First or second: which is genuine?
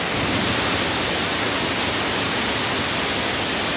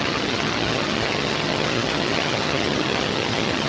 first